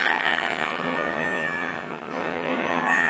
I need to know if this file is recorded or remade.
remade